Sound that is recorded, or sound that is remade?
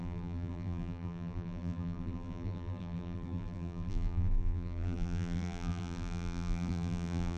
remade